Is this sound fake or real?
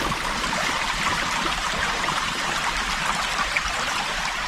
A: fake